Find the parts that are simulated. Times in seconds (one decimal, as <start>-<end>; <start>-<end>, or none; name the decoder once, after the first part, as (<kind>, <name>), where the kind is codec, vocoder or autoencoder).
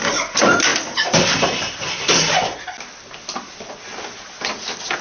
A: none